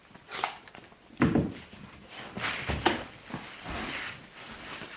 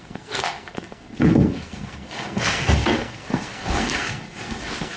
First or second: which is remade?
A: second